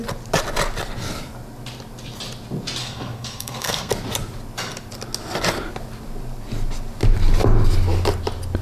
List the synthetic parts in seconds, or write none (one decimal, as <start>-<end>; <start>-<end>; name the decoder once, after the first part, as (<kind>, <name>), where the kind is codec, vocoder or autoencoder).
2.8-3.9 (codec, SNAC)